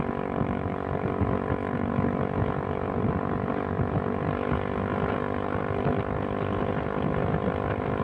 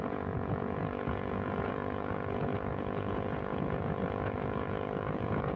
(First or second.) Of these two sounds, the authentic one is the first